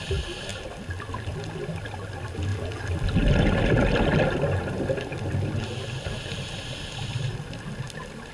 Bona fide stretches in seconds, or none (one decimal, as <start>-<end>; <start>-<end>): 0.0-8.3